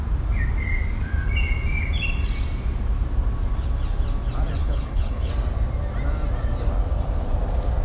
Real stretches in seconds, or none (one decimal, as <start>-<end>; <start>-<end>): 0.0-4.6; 5.3-7.8